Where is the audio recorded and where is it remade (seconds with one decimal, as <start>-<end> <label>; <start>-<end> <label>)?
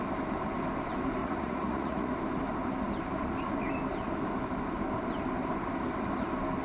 0.0-1.2 recorded; 1.2-2.1 remade; 2.1-6.6 recorded